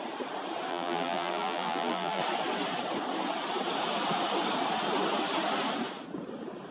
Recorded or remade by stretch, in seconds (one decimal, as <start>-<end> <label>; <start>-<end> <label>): 0.0-0.7 recorded; 0.7-2.2 remade; 2.2-6.7 recorded